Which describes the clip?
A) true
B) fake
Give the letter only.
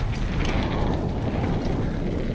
A